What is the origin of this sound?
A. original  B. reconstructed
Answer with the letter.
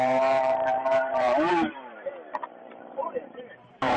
B